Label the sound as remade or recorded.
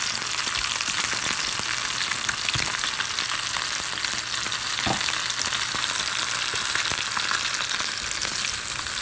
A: recorded